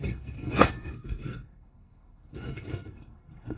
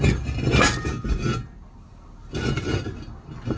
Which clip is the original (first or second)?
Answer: second